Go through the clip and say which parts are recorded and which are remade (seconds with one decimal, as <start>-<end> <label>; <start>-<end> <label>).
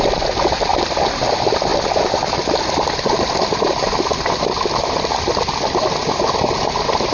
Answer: 0.0-0.7 recorded; 0.7-1.2 remade; 1.2-1.7 recorded; 1.7-3.1 remade; 3.1-7.1 recorded